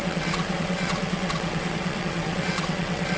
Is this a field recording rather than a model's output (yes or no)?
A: no